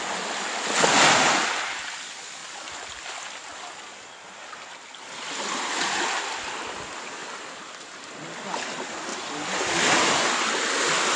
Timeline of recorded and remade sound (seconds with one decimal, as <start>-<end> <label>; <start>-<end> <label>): 0.0-2.4 recorded; 2.4-3.2 remade; 3.2-7.2 recorded; 7.2-7.9 remade; 7.9-9.1 recorded; 9.1-10.3 remade; 10.3-11.2 recorded